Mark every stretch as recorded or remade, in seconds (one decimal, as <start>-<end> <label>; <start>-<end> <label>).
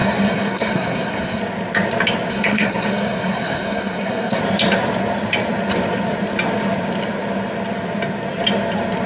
0.0-1.4 remade; 1.4-2.3 recorded; 2.3-4.4 remade; 4.4-9.1 recorded